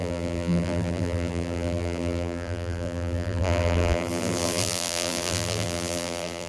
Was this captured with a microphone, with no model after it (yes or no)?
no